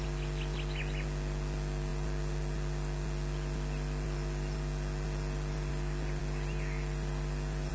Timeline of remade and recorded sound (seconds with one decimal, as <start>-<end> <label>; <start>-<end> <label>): 0.0-7.7 recorded